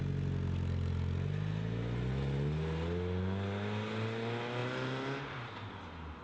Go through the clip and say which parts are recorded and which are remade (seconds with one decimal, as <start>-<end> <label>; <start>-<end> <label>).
0.0-6.2 recorded